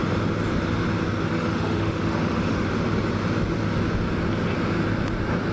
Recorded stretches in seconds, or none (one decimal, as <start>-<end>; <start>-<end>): 0.0-1.3; 2.7-5.5